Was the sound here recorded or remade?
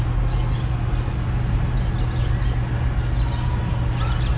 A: recorded